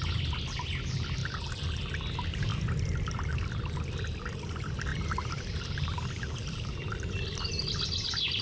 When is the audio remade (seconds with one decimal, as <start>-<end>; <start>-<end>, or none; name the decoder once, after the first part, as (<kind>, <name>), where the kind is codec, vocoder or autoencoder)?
1.2-2.0 (vocoder, BigVGAN v2); 4.9-7.5